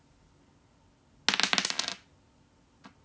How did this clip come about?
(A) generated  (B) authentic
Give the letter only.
B